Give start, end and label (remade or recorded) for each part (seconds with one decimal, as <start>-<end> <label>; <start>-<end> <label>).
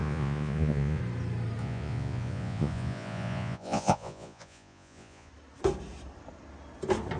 0.0-1.0 remade; 1.0-1.6 recorded; 1.6-5.3 remade; 5.3-7.2 recorded